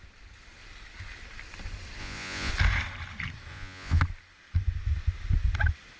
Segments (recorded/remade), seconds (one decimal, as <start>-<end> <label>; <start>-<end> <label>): 0.0-2.0 recorded; 2.0-2.5 remade; 2.5-3.5 recorded; 3.5-4.0 remade; 4.0-6.0 recorded